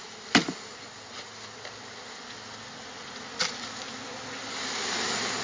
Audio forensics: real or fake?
real